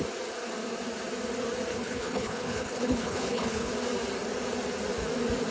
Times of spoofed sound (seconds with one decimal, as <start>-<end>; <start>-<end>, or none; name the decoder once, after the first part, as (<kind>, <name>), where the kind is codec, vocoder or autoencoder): 1.7-3.7 (codec, HILCodec)